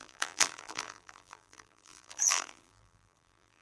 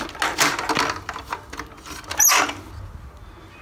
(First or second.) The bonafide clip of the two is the second